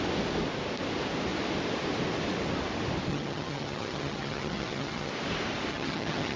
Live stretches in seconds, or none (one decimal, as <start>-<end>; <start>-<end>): 0.0-3.1; 5.1-5.7